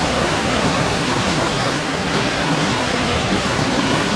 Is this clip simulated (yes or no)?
yes